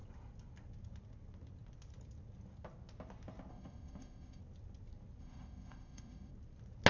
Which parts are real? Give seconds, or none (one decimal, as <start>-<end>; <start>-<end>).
0.0-3.5; 4.4-5.2; 6.3-6.9